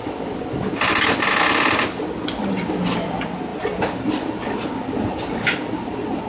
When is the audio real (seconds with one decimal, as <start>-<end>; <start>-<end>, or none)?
0.0-6.3